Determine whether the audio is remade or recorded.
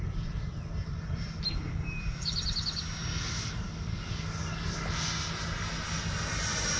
recorded